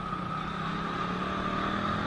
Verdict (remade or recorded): recorded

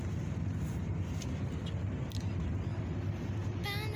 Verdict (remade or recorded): recorded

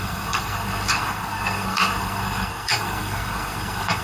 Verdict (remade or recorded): remade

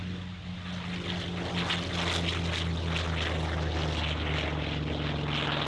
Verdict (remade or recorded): recorded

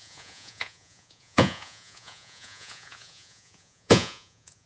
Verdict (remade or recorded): remade